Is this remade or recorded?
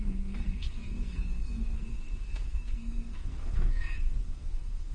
remade